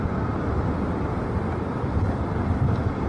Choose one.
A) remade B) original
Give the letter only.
B